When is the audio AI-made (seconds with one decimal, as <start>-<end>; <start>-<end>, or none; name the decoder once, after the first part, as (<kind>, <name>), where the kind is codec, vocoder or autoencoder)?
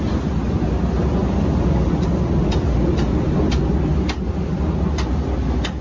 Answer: none